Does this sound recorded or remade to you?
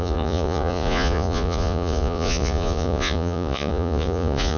remade